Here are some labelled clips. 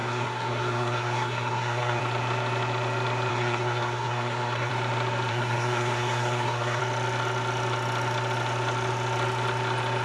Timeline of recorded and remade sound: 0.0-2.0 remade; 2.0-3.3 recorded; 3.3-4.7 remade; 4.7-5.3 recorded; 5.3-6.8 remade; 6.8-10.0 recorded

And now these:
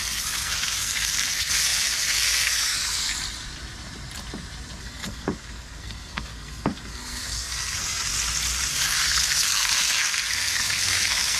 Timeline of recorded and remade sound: 0.0-3.1 remade; 3.1-4.8 recorded; 4.8-8.1 remade; 8.1-8.7 recorded; 8.7-11.4 remade

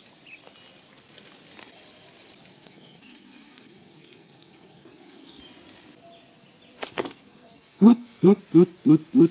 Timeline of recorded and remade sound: 0.0-2.5 recorded; 2.5-5.4 remade; 5.4-6.9 recorded; 6.9-8.4 remade; 8.4-9.3 recorded

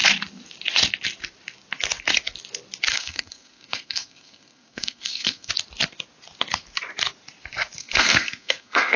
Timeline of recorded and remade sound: 0.0-2.9 recorded; 2.9-5.5 remade; 5.5-7.8 recorded; 7.8-9.0 remade

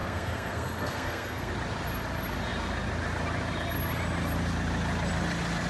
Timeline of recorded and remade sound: 0.0-1.5 remade; 1.5-5.7 recorded